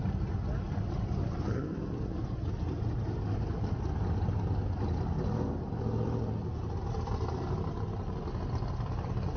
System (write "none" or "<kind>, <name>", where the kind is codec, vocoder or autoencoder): none